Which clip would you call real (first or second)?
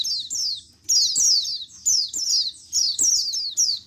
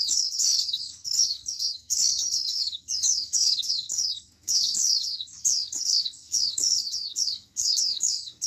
first